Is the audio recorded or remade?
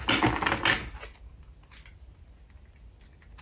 recorded